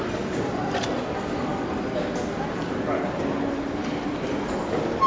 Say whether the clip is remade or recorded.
recorded